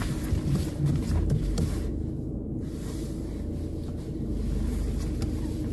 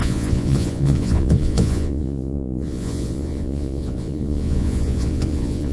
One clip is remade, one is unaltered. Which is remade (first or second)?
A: second